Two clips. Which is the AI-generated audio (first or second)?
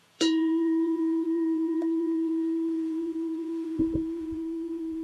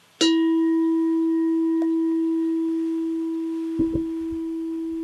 first